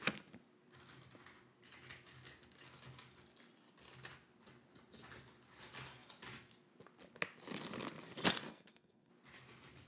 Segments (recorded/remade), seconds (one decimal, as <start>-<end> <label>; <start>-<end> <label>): 0.0-8.5 recorded; 8.5-9.1 remade; 9.1-9.9 recorded